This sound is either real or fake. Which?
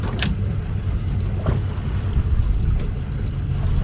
real